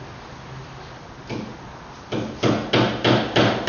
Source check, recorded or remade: recorded